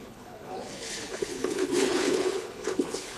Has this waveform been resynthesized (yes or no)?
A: yes